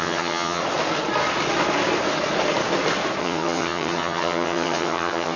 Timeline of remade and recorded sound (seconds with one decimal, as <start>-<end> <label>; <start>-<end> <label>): 0.0-0.6 remade; 0.6-3.2 recorded; 3.2-5.4 remade